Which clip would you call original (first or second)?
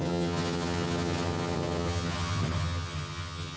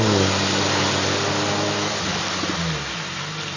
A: second